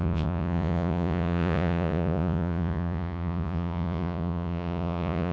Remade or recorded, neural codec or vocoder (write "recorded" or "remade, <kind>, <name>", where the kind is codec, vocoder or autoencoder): remade, vocoder, Vocos